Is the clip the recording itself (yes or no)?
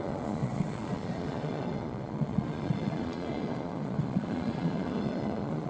no